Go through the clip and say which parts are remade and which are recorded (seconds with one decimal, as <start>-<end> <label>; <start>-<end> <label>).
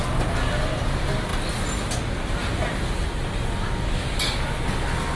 0.0-5.2 recorded